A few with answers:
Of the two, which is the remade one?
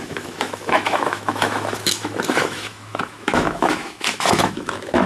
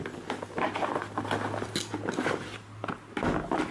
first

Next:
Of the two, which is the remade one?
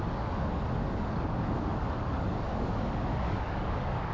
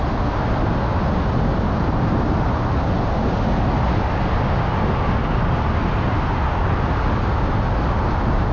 first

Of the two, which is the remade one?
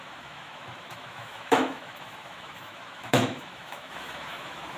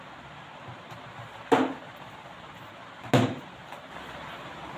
first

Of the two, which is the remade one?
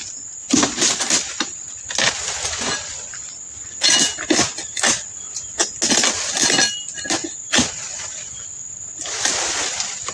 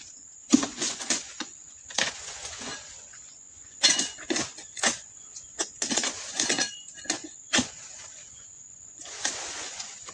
second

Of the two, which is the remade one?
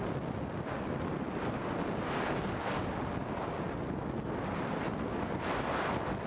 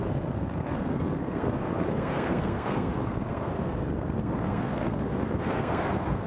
second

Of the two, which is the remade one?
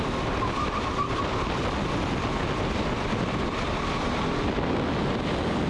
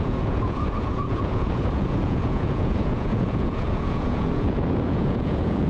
second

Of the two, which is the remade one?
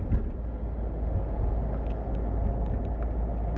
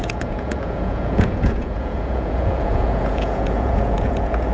second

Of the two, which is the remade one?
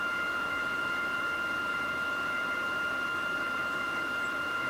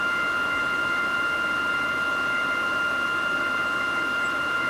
first